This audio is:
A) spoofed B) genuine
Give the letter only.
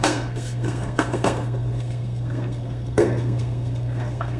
A